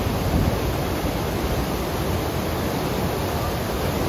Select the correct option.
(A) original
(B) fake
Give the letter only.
A